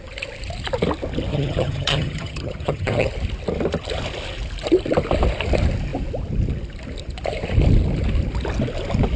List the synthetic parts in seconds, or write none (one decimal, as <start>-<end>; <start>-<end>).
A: 1.3-3.1